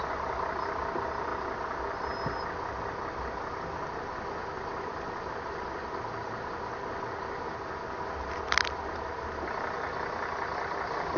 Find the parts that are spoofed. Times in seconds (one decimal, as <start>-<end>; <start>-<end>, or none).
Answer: none